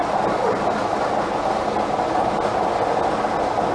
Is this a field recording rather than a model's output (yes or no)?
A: yes